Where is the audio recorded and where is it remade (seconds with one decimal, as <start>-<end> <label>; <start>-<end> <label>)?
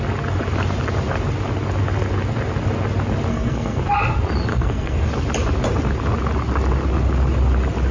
0.0-3.3 recorded; 3.3-3.8 remade; 3.8-4.5 recorded; 4.5-5.1 remade; 5.1-7.9 recorded